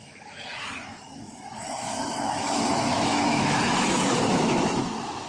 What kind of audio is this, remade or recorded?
remade